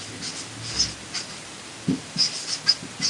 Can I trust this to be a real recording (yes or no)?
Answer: yes